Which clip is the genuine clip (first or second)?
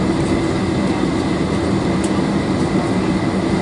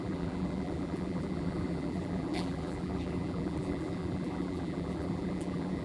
first